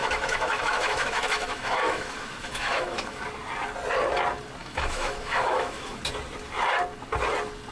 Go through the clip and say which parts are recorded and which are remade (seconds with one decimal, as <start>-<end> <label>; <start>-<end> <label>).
0.0-3.2 remade; 3.2-4.6 recorded; 4.6-6.0 remade; 6.0-7.7 recorded